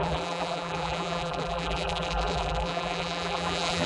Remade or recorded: remade